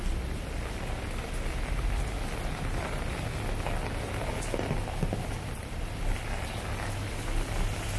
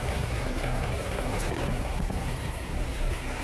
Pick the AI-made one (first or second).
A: second